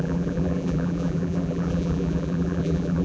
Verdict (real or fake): fake